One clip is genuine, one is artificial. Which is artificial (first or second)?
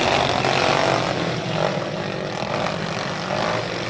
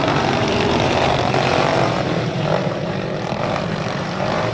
second